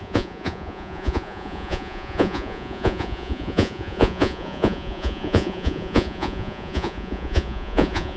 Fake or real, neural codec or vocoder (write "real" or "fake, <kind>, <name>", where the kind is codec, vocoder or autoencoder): fake, vocoder, Vocos